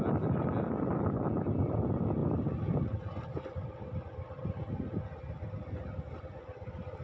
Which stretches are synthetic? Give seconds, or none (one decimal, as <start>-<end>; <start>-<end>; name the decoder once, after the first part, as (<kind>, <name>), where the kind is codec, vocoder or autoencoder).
none